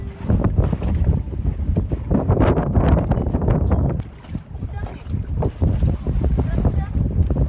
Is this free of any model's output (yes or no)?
yes